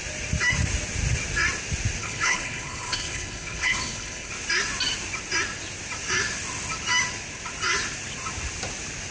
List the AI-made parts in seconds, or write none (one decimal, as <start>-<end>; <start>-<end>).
2.0-4.3